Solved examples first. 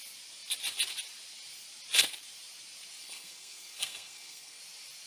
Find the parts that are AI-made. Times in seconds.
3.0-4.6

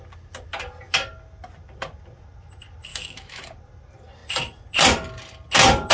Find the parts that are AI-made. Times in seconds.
2.9-3.4

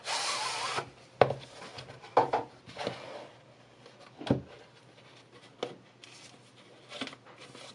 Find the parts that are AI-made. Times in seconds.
1.7-3.4

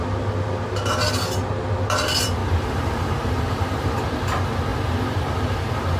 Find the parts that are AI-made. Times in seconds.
2.4-4.0

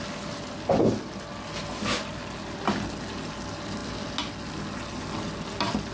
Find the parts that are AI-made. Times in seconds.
none

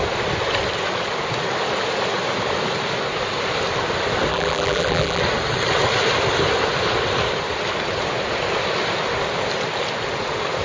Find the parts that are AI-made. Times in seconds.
4.3-5.2